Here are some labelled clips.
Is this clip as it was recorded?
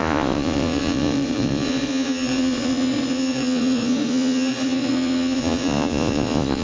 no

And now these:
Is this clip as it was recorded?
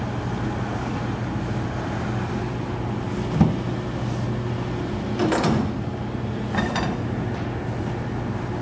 yes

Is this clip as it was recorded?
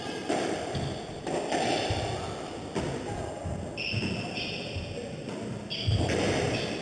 yes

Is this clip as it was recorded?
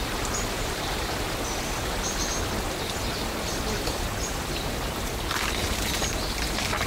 yes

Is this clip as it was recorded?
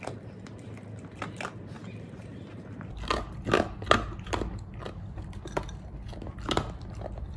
yes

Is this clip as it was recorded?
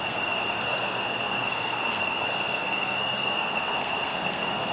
no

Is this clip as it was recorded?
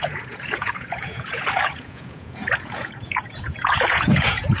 no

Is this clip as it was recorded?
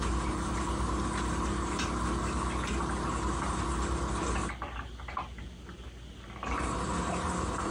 yes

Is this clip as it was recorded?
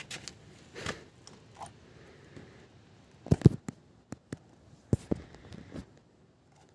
yes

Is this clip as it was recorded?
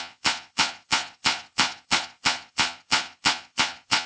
no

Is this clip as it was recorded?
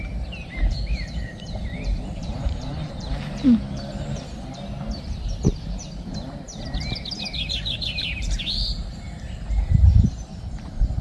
no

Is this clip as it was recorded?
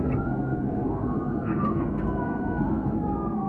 no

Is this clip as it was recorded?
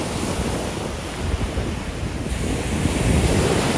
yes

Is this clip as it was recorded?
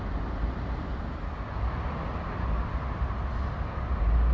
yes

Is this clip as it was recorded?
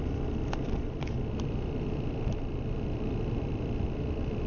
yes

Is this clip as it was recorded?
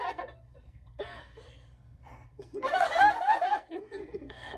no